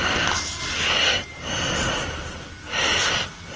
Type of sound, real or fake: real